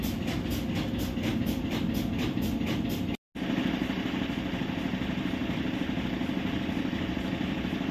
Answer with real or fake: real